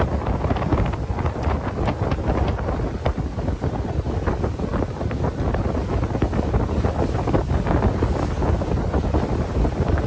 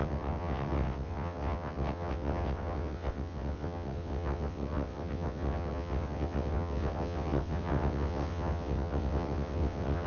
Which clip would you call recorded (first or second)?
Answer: first